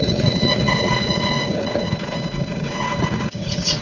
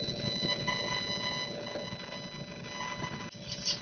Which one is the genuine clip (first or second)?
second